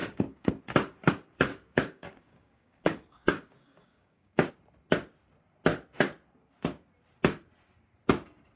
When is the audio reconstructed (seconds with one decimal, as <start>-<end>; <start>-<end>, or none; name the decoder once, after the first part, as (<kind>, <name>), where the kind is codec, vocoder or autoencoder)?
0.0-0.6 (codec, DAC); 1.5-4.5